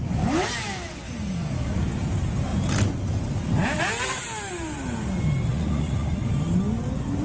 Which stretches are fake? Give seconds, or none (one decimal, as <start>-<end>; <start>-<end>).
5.5-6.1